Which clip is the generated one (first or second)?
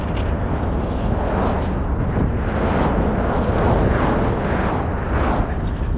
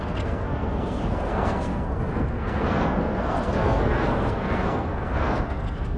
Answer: second